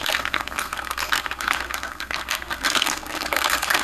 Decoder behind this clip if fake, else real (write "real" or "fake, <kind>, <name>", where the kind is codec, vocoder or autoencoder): fake, codec, SNAC